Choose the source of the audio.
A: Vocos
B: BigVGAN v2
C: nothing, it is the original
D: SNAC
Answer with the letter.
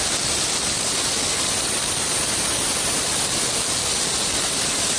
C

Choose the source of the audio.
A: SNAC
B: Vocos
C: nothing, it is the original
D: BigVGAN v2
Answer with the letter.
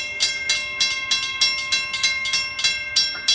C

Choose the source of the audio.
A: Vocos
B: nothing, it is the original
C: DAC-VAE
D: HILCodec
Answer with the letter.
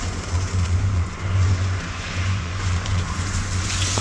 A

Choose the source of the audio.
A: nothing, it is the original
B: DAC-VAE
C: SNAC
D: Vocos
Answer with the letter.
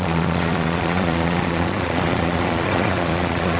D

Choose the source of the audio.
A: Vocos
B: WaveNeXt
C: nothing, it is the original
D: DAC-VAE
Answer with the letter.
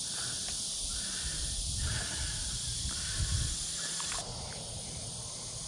C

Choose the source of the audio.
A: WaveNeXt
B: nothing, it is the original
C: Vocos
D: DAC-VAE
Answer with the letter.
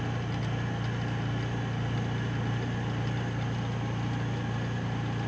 B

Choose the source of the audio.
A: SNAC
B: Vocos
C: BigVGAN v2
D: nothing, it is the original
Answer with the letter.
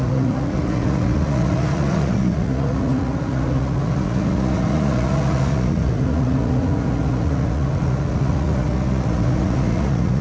B